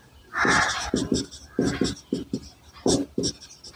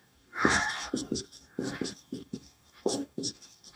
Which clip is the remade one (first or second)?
second